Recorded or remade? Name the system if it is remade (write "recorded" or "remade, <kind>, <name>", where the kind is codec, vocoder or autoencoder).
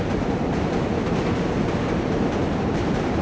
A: remade, vocoder, BigVGAN v2